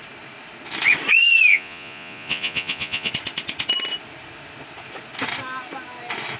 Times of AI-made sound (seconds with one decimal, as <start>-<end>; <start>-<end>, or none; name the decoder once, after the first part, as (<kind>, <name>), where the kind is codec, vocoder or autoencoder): 1.5-3.1 (vocoder, Vocos)